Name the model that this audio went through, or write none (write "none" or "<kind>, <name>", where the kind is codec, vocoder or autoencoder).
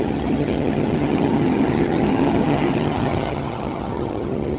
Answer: vocoder, HiFi-GAN